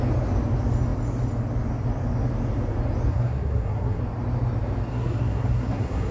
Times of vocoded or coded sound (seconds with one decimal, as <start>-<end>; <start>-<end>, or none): 3.1-4.0; 4.9-6.1